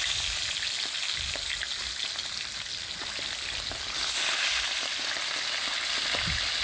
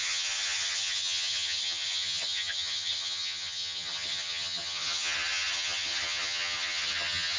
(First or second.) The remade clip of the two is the second